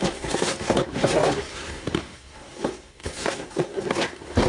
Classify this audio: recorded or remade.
remade